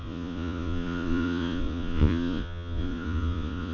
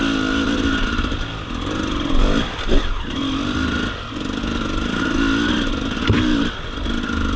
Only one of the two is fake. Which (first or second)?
first